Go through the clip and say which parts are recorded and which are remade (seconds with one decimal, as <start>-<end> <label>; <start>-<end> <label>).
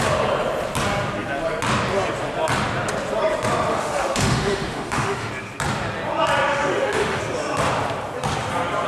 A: 0.0-3.7 recorded; 3.7-5.3 remade; 5.3-6.5 recorded; 6.5-7.2 remade; 7.2-8.9 recorded